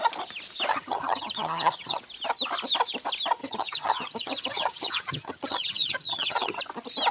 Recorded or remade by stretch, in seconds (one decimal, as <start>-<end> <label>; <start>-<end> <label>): 0.0-0.7 recorded; 0.7-2.0 remade; 2.0-3.4 recorded; 3.4-6.6 remade; 6.6-7.1 recorded